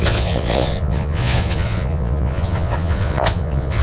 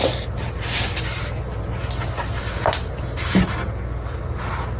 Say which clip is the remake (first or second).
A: first